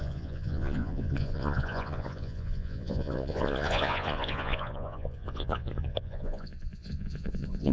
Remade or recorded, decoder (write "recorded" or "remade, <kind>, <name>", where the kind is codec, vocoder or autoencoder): remade, vocoder, Vocos